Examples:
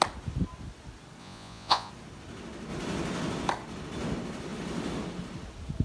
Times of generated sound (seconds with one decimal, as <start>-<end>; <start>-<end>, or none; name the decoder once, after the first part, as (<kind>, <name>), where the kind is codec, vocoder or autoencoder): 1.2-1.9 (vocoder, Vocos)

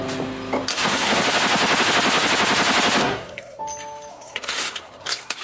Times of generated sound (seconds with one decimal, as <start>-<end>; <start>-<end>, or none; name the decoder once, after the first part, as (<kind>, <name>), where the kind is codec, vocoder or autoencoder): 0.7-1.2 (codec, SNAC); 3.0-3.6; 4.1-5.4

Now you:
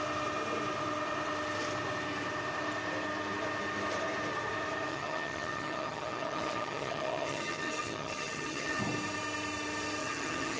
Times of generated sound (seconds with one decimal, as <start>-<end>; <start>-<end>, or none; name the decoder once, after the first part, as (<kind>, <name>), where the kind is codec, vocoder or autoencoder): 4.9-8.8 (vocoder, HiFi-GAN); 10.0-10.6